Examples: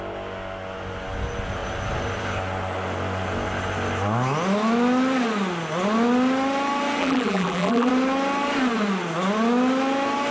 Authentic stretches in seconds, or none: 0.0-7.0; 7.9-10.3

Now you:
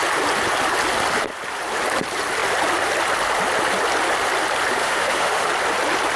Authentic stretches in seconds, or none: 0.0-4.8; 5.5-6.2

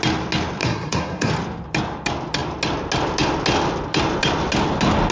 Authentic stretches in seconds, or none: 0.0-0.6; 1.3-5.1

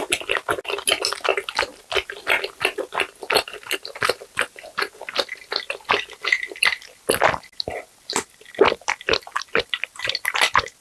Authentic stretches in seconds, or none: 0.0-10.8